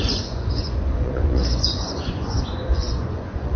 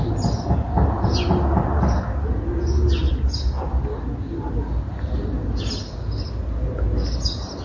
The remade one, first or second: first